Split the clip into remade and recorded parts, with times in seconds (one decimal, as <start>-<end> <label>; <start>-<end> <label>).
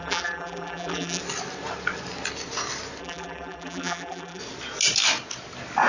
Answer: 0.0-1.2 remade; 1.2-3.0 recorded; 3.0-4.4 remade; 4.4-5.9 recorded